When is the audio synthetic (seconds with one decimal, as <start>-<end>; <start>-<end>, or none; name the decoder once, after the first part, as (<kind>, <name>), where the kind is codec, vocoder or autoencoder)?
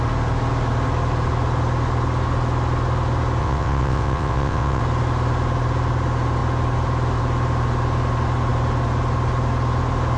3.4-4.8 (vocoder, WaveNeXt)